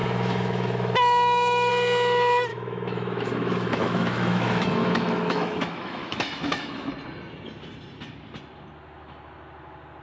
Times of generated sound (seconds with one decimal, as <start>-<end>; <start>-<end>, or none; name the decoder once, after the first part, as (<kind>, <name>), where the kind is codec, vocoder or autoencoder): 0.0-1.7 (autoencoder, DAC-VAE); 2.5-6.9